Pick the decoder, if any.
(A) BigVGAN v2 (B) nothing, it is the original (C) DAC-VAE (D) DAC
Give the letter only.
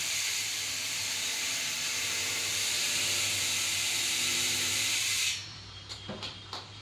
A